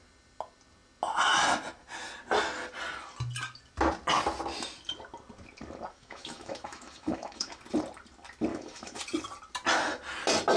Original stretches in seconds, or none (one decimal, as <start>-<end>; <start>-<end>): 0.0-5.9; 7.6-8.5; 9.0-10.6